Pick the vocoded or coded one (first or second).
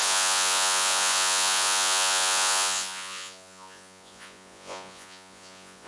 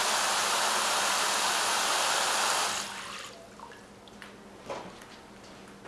first